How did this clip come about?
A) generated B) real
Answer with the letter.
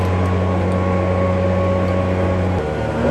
B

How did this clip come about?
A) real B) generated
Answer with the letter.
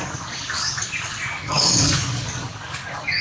B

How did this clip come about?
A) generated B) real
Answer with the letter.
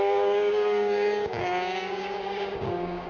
A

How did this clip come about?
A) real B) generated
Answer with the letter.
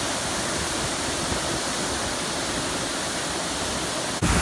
A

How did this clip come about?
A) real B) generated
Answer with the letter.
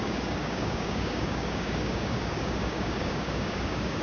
B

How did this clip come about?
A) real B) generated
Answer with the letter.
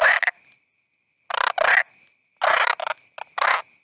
A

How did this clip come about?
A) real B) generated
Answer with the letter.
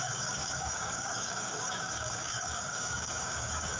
B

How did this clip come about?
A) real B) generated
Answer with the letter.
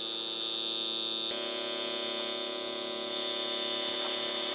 A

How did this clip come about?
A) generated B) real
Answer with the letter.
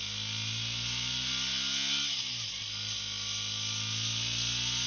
B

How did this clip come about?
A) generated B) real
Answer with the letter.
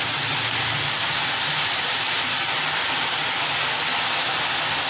B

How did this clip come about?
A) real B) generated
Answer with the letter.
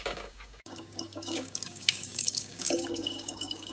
B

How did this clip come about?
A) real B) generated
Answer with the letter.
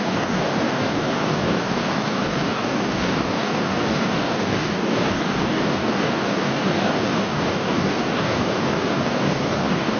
B